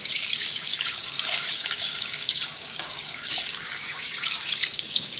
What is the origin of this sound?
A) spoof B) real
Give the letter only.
A